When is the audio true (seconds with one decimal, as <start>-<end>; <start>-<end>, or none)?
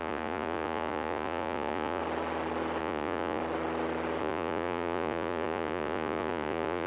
2.0-2.8; 3.4-4.2